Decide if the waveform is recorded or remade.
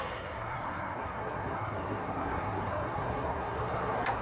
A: remade